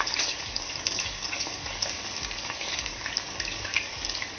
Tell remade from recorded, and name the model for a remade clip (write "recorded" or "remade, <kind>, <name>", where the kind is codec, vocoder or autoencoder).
remade, codec, DAC